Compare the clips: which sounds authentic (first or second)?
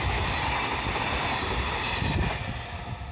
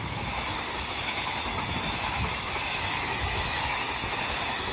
first